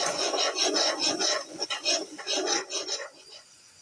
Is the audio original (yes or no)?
no